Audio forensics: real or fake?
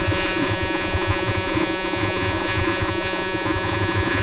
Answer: fake